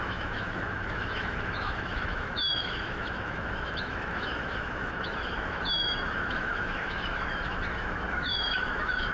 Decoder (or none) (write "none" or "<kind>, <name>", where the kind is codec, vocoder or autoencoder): autoencoder, DAC-VAE